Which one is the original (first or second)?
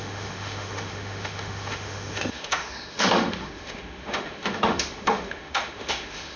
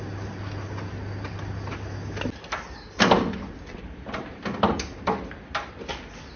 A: second